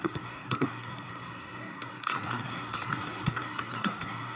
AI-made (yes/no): yes